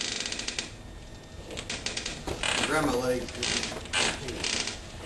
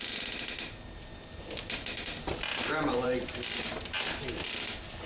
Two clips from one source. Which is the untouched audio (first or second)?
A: first